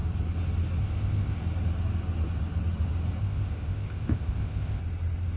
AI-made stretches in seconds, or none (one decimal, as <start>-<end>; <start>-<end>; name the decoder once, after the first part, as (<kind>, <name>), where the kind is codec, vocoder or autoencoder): 0.8-1.4 (codec, ZipCodec); 3.2-4.8